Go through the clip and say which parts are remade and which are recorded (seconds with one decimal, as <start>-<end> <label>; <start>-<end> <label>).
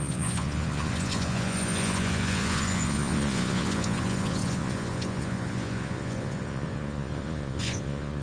0.0-8.2 remade